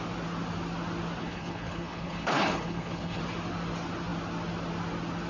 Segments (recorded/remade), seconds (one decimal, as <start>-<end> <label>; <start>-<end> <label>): 0.0-1.2 recorded; 1.2-3.2 remade; 3.2-5.3 recorded